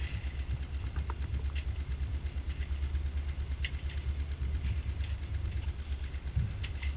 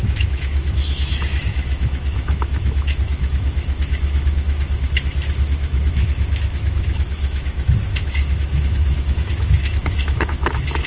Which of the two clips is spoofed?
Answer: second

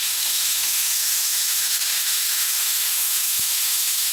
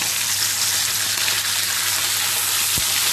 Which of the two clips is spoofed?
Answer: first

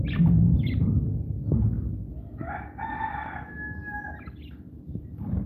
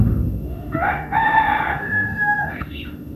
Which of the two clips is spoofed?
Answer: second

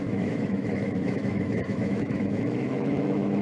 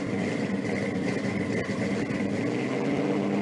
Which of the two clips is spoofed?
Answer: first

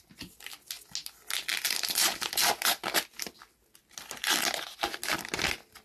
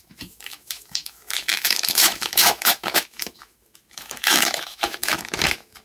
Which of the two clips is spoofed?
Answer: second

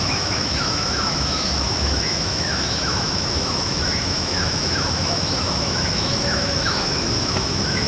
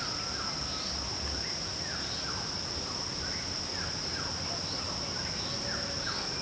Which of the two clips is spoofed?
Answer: first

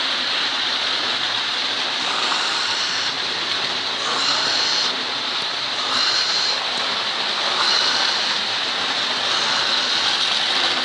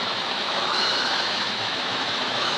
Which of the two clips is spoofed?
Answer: second